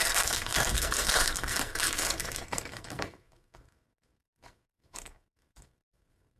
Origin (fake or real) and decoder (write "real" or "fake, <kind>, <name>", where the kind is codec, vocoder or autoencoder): fake, codec, SNAC